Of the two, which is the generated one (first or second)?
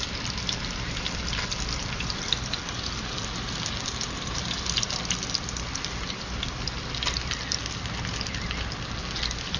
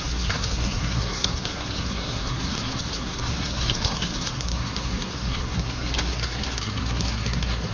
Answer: second